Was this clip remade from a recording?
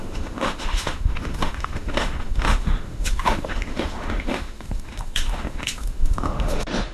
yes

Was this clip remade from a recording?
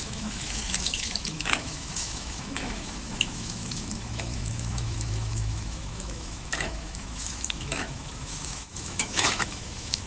yes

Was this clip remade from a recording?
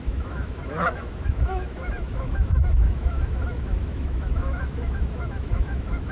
yes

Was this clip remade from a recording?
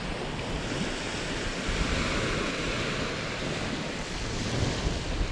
no